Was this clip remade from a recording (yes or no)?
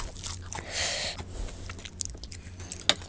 no